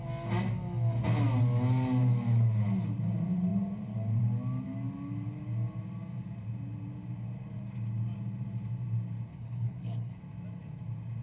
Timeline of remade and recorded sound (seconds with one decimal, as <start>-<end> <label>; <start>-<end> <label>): 0.0-9.3 recorded; 9.3-10.2 remade; 10.2-11.2 recorded